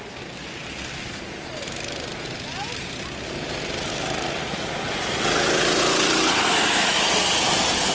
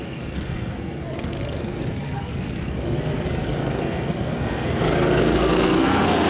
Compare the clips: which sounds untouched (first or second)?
first